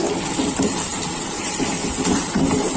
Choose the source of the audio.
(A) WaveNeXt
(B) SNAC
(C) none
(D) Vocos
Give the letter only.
C